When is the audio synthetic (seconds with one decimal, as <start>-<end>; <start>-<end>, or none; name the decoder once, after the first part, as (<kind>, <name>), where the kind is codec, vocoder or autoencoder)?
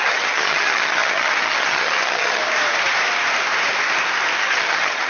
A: 0.0-2.4 (vocoder, HiFi-GAN); 4.4-5.1